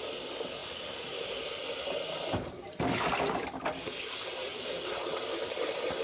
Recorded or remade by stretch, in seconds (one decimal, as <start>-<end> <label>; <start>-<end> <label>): 0.0-6.0 recorded